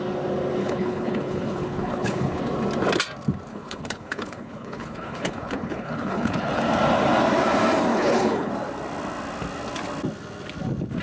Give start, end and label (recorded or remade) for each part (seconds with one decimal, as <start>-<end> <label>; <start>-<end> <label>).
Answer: 0.0-0.6 recorded; 0.6-2.4 remade; 2.4-3.5 recorded; 3.5-6.6 remade; 6.6-7.9 recorded; 7.9-8.5 remade; 8.5-11.0 recorded